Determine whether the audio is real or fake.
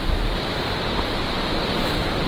real